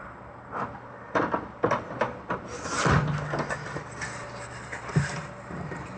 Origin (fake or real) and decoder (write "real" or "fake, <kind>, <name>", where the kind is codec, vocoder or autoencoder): fake, vocoder, BigVGAN v2